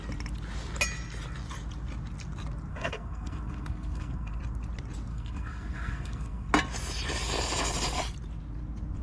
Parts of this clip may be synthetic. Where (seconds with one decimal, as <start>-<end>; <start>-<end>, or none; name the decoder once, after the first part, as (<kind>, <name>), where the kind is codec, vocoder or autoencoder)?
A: 2.7-4.4 (codec, SNAC); 5.1-6.5